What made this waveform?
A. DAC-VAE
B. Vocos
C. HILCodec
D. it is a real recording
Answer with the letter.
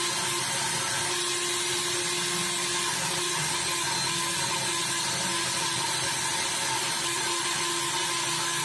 D